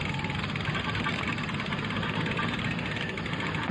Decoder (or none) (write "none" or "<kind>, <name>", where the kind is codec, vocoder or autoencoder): none